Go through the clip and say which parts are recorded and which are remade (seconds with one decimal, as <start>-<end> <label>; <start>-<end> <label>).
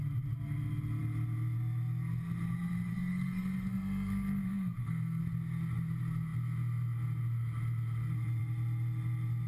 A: 0.0-2.9 recorded; 2.9-5.2 remade; 5.2-9.5 recorded